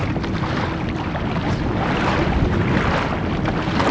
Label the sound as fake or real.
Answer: real